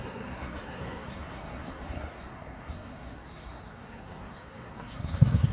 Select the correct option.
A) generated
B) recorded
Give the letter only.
A